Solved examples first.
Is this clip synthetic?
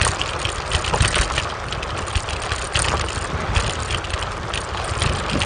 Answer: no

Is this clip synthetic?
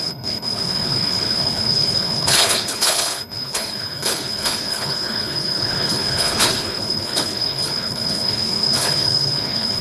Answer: yes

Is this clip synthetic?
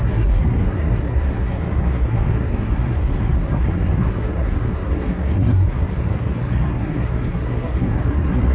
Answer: yes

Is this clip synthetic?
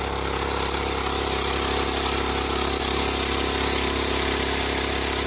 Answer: no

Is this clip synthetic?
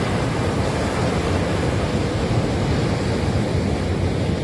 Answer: no